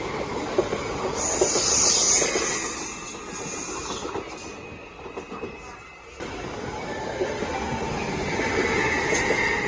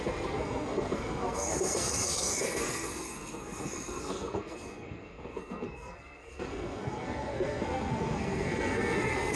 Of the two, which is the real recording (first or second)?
first